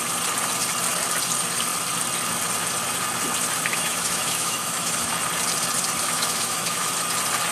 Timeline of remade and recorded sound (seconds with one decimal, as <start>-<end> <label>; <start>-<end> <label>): 0.0-3.7 recorded; 3.7-5.1 remade; 5.1-6.0 recorded; 6.0-6.9 remade; 6.9-7.5 recorded